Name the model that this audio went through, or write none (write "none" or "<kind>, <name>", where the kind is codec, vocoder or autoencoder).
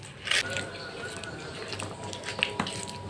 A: none